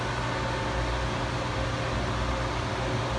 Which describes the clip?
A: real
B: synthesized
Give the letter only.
A